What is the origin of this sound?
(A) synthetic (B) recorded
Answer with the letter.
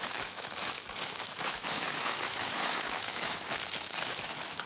A